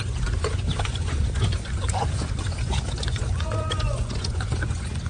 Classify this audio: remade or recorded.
remade